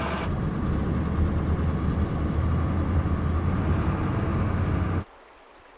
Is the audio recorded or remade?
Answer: recorded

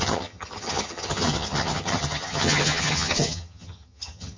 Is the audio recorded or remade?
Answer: remade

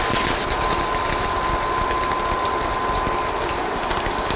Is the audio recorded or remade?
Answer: recorded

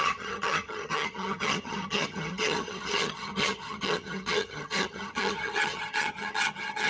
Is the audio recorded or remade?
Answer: remade